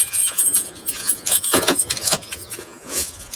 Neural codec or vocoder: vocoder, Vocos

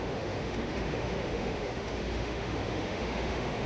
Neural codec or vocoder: autoencoder, DAC-VAE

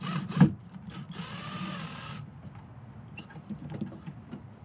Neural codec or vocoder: none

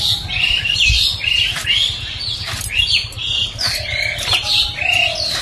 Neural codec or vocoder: none